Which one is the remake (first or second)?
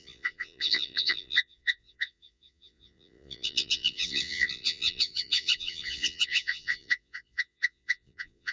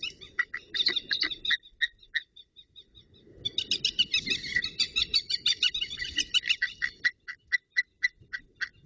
first